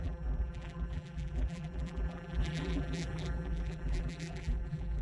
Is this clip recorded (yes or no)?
no